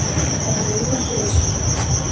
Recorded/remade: recorded